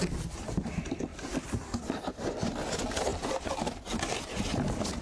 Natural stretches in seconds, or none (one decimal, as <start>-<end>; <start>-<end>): 0.0-5.0